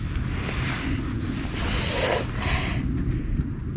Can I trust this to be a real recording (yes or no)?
yes